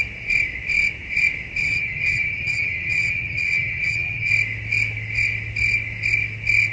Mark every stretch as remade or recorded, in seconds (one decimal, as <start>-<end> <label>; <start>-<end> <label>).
0.0-1.6 recorded; 1.6-4.3 remade; 4.3-6.7 recorded